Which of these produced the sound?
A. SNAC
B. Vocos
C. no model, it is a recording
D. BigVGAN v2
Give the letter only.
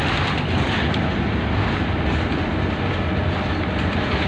C